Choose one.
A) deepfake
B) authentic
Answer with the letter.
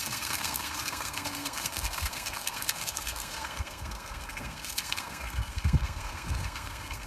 A